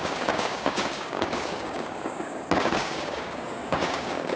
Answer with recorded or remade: remade